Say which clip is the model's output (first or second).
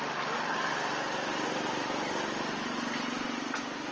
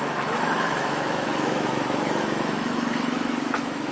second